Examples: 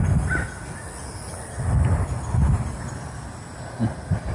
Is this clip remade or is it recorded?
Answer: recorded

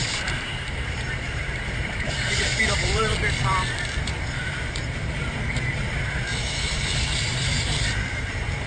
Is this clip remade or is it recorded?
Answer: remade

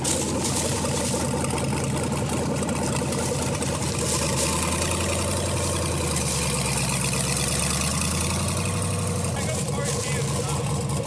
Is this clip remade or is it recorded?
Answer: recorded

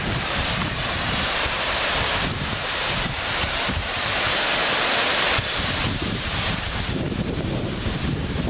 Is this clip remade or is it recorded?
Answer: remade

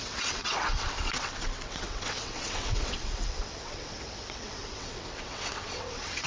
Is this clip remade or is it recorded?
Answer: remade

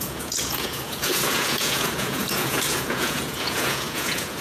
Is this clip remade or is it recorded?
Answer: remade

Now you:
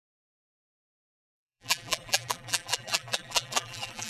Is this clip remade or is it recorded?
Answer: remade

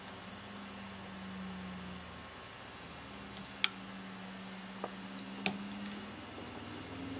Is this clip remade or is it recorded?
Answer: recorded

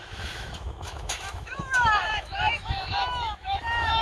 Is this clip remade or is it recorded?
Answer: remade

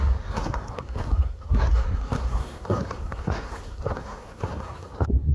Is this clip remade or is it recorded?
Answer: remade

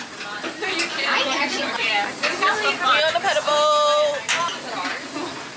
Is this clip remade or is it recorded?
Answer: recorded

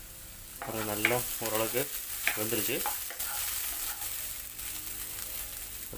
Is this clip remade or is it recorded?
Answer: recorded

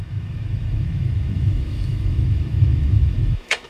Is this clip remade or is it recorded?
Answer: remade